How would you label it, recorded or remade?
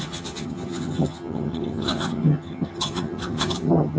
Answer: remade